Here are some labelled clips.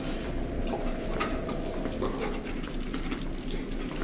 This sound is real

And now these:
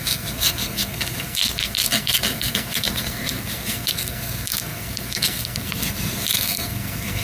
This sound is fake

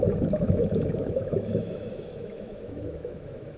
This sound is fake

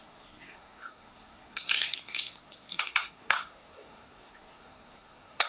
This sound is fake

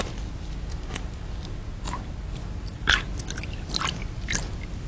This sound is real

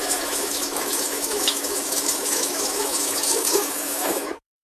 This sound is fake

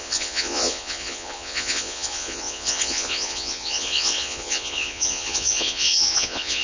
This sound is fake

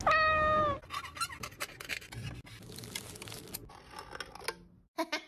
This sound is real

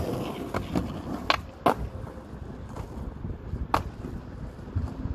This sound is real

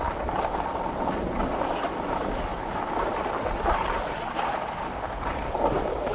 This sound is real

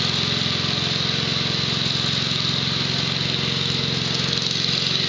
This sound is real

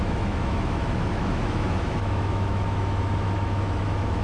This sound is fake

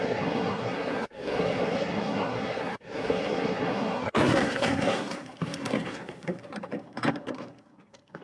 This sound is fake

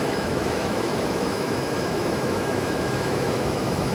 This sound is fake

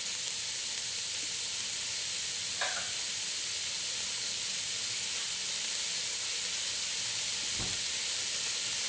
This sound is real